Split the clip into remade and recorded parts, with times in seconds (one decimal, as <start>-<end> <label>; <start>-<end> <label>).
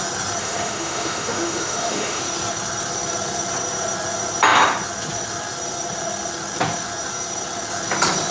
0.0-0.4 recorded; 0.4-2.2 remade; 2.2-8.3 recorded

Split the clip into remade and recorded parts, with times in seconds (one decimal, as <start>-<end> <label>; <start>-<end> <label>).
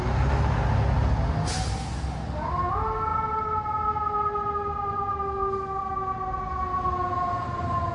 0.0-7.9 recorded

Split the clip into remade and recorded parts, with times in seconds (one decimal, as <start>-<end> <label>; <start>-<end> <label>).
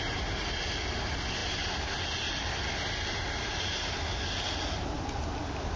0.0-5.8 recorded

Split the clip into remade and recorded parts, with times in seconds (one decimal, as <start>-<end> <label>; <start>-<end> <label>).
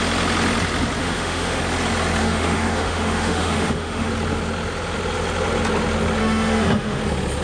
0.0-1.0 recorded; 1.0-1.6 remade; 1.6-2.2 recorded; 2.2-4.1 remade; 4.1-6.2 recorded; 6.2-7.0 remade; 7.0-7.4 recorded